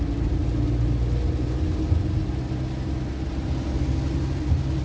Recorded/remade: recorded